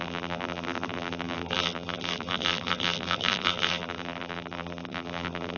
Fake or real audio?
fake